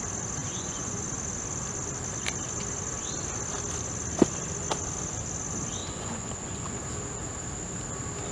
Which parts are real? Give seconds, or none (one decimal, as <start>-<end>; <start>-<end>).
0.0-0.4; 1.0-5.8; 6.8-8.3